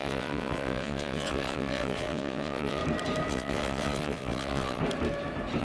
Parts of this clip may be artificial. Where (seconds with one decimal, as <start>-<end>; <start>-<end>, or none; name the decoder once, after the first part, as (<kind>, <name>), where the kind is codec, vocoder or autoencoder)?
0.0-2.8 (vocoder, WaveNeXt); 3.3-4.8